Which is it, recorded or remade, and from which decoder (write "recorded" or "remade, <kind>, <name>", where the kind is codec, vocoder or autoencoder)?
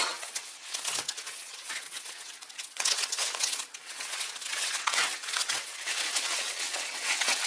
remade, vocoder, WaveNeXt